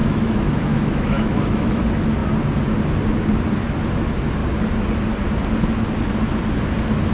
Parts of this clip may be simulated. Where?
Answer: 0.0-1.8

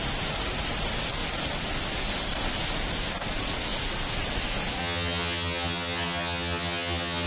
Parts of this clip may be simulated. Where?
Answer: 4.8-7.3

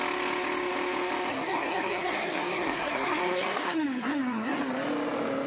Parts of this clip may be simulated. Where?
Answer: 1.3-4.6

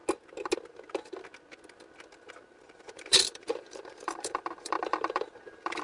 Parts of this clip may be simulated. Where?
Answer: 2.3-5.8